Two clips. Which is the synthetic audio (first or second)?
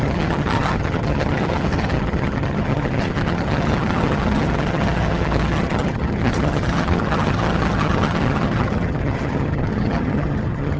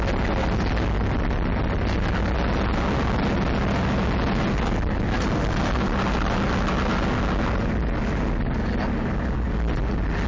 first